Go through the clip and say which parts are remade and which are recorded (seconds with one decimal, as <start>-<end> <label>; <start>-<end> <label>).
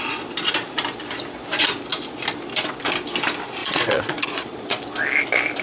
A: 0.0-3.6 recorded; 3.6-4.8 remade; 4.8-5.6 recorded